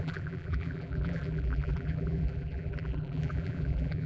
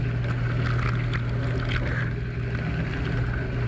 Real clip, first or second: second